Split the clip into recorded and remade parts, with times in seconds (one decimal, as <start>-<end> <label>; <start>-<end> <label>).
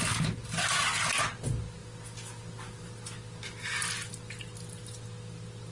0.0-5.7 recorded